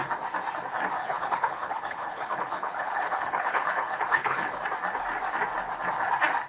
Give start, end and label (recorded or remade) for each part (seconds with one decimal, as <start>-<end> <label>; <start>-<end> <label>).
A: 0.0-1.0 recorded; 1.0-4.6 remade; 4.6-6.5 recorded